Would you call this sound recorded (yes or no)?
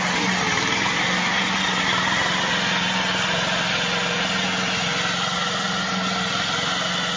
yes